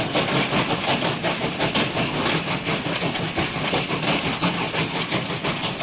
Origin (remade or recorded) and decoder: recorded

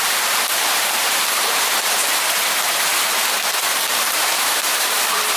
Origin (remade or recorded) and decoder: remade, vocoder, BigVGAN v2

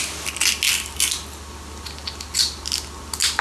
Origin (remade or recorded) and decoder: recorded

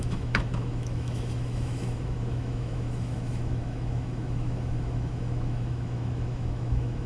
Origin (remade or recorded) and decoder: remade, autoencoder, DAC-VAE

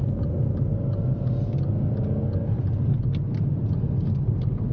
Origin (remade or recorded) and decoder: recorded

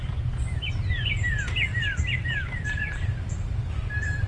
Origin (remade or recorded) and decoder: recorded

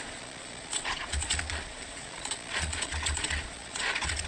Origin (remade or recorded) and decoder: remade, vocoder, Vocos